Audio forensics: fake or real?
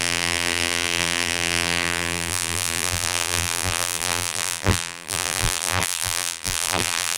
fake